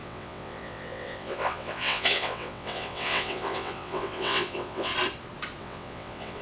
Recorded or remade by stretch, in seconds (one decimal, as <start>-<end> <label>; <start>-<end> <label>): 0.0-4.9 remade; 4.9-5.6 recorded; 5.6-6.4 remade